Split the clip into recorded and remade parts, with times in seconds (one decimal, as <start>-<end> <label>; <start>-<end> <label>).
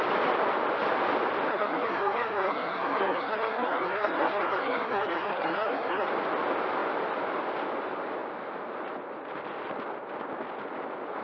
0.0-1.5 recorded; 1.5-6.1 remade; 6.1-11.2 recorded